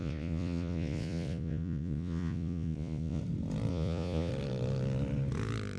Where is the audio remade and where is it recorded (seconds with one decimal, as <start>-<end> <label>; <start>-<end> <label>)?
0.0-3.2 remade; 3.2-3.7 recorded; 3.7-4.3 remade; 4.3-5.8 recorded